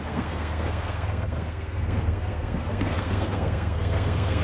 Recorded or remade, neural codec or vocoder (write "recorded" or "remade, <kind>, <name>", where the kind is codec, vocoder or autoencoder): remade, codec, SNAC